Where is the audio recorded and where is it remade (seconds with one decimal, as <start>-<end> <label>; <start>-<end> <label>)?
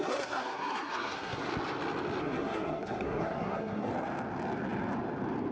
0.0-1.5 remade; 1.5-2.2 recorded; 2.2-3.9 remade; 3.9-5.5 recorded